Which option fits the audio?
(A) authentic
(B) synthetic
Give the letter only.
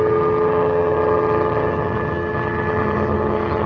B